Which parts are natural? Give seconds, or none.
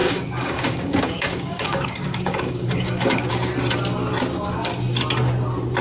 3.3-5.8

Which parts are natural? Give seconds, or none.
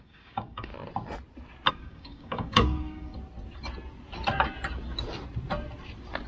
0.7-1.7; 3.1-6.3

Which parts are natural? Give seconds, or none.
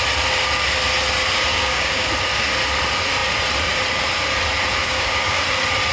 0.0-1.5; 2.1-4.8; 5.4-5.9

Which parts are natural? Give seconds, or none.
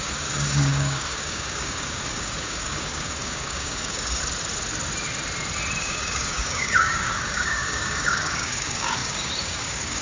4.2-5.8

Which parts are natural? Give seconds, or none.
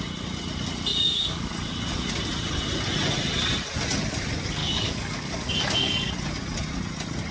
0.0-0.9; 1.5-4.6; 6.1-7.3